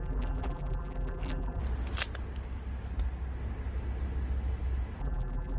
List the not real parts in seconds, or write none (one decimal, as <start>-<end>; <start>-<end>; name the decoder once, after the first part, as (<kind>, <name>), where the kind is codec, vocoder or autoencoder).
0.0-1.6 (vocoder, BigVGAN v2); 5.0-5.6